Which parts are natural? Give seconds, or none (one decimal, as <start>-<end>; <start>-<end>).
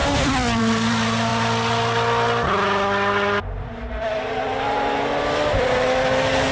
0.0-6.5